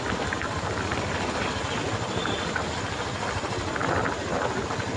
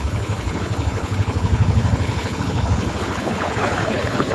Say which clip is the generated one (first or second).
second